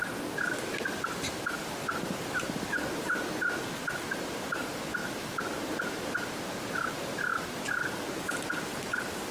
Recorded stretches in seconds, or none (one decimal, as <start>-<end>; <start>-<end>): 0.0-9.3

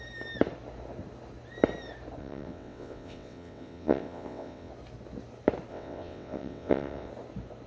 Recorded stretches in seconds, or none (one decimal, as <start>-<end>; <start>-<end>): 0.0-2.2; 4.7-5.7; 7.1-7.7

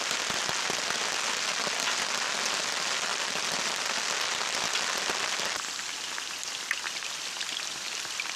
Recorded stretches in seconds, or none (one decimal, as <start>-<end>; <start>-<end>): 0.0-3.1; 3.8-8.4

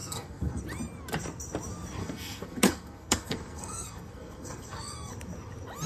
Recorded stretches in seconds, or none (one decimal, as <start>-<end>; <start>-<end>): 0.6-2.0; 5.1-5.9

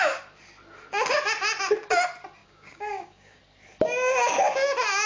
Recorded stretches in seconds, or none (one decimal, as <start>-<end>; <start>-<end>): 0.0-2.4; 3.4-5.1